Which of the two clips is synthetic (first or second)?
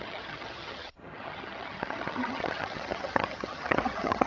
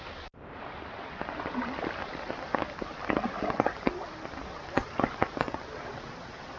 first